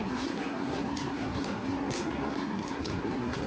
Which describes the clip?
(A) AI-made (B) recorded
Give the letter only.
A